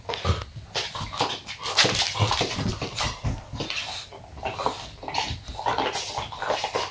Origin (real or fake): real